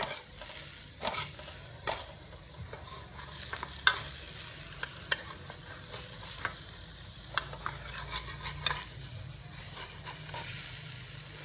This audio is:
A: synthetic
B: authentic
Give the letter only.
B